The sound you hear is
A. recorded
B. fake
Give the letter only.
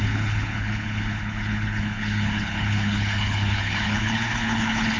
B